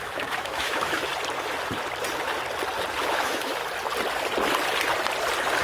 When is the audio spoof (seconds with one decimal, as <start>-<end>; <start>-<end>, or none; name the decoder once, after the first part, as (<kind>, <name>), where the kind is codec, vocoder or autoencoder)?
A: 0.0-1.1 (autoencoder, DAC-VAE); 3.0-3.6